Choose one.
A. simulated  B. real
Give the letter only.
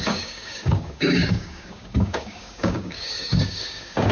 A